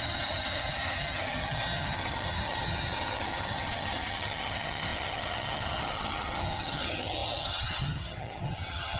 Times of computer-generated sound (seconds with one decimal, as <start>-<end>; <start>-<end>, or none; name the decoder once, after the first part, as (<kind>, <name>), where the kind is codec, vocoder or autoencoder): 0.0-9.0 (vocoder, HiFi-GAN)